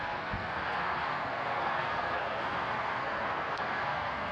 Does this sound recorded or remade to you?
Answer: remade